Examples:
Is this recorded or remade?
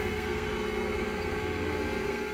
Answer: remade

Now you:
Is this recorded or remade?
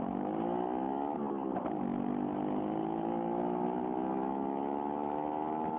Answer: recorded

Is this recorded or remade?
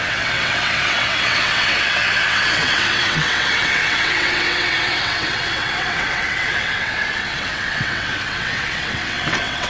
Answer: remade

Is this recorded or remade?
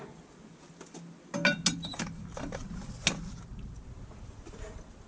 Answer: recorded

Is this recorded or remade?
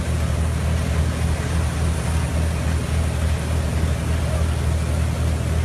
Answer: recorded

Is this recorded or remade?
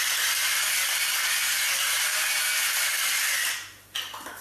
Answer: recorded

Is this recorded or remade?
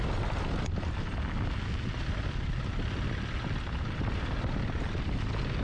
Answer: recorded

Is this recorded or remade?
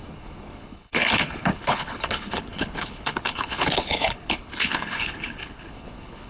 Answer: remade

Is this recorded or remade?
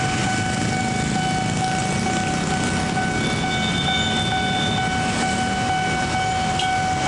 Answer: recorded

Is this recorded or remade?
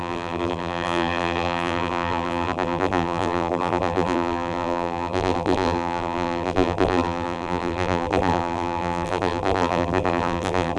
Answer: remade